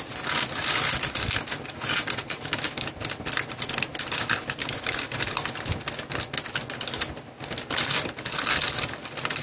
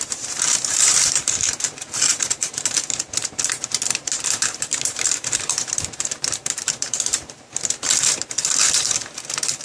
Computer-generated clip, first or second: second